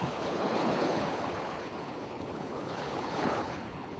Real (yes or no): no